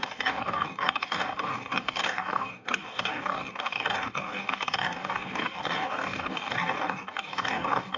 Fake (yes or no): yes